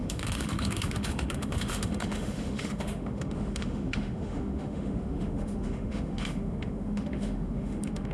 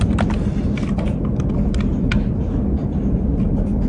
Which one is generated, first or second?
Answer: first